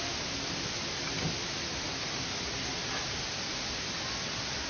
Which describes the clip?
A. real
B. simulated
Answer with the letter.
A